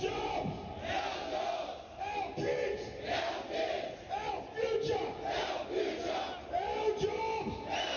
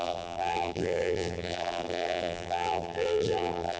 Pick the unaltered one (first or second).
first